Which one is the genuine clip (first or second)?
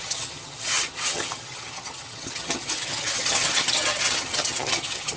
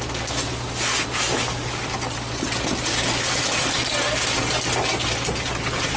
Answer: second